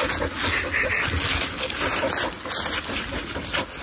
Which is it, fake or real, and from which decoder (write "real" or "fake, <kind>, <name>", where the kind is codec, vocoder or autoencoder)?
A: real